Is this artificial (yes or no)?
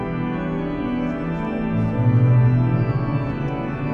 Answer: no